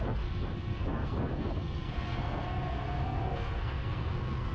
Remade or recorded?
remade